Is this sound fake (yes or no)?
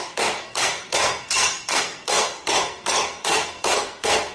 yes